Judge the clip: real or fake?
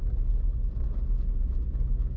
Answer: real